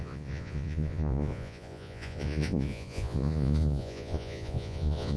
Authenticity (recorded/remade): remade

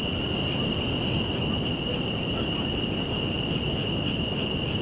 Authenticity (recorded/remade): recorded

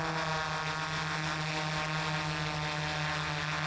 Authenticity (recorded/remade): recorded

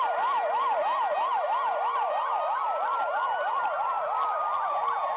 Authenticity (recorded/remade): recorded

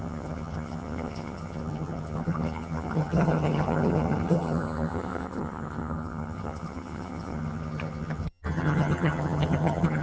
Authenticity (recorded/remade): remade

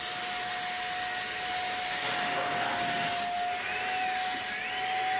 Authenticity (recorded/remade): recorded